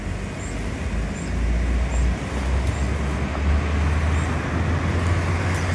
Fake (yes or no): no